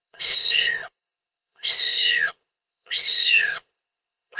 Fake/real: fake